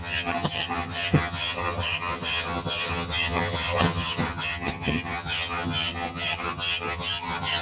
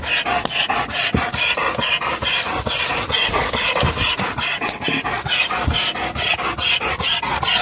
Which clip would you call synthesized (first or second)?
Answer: first